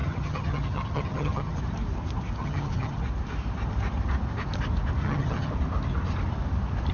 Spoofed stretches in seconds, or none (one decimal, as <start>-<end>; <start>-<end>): 0.0-1.6; 2.4-3.0; 5.0-5.5